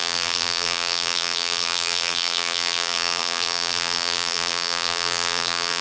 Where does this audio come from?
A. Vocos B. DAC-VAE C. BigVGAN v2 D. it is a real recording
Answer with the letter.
C